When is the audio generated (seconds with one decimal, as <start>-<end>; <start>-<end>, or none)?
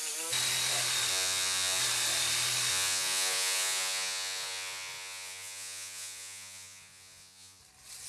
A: 1.1-1.8; 2.7-7.6